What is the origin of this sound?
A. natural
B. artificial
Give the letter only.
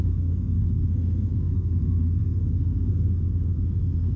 B